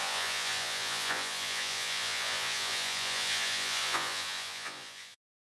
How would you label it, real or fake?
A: fake